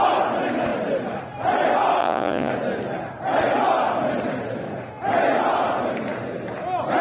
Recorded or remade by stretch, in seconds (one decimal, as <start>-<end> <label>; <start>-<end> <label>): 0.0-2.0 recorded; 2.0-2.5 remade; 2.5-7.0 recorded